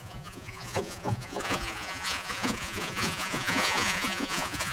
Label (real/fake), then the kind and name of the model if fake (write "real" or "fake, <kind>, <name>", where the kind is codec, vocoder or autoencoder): fake, vocoder, Vocos